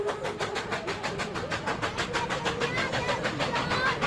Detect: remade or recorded recorded